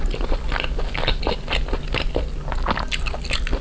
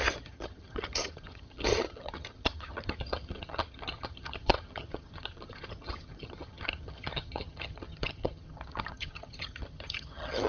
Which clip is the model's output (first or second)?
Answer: second